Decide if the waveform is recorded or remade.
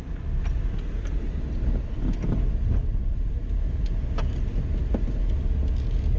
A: recorded